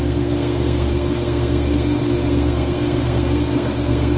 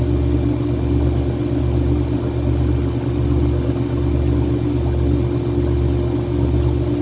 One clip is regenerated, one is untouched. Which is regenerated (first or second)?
first